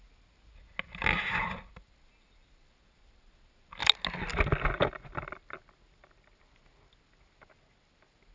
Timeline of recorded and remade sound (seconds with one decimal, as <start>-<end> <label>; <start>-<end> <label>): 0.0-1.4 recorded; 1.4-2.7 remade; 2.7-8.3 recorded